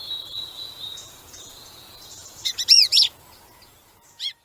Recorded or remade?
remade